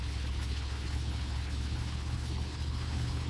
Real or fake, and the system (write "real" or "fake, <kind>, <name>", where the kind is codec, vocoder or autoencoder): fake, codec, HILCodec